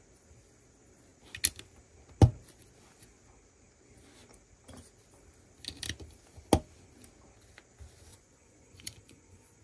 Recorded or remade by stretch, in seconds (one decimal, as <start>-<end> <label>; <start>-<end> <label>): 0.0-8.1 recorded; 8.1-9.6 remade